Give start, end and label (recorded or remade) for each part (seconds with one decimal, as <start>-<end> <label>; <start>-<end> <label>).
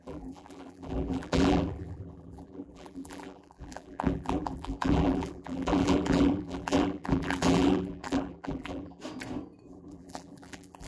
0.0-9.0 remade; 9.0-9.7 recorded; 9.7-10.9 remade